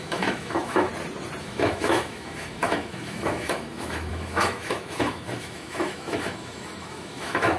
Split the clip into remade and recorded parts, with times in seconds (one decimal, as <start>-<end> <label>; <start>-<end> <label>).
0.0-0.9 remade; 0.9-1.4 recorded; 1.4-7.6 remade